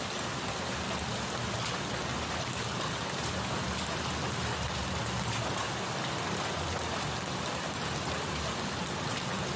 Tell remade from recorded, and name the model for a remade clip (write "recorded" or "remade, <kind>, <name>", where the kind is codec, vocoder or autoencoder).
recorded